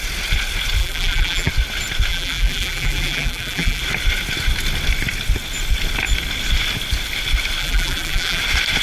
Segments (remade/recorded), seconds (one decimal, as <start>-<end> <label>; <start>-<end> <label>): 0.0-0.8 recorded; 0.8-1.5 remade; 1.5-2.1 recorded; 2.1-3.8 remade; 3.8-7.6 recorded; 7.6-8.4 remade; 8.4-8.8 recorded